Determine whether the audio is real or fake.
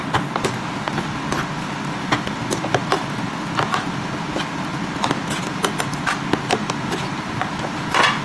real